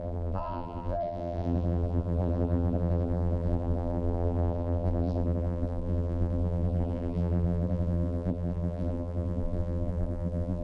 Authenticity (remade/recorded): remade